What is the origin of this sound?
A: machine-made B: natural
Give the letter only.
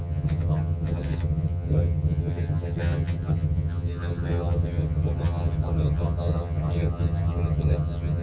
A